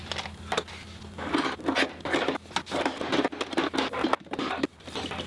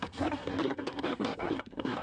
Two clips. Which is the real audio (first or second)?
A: first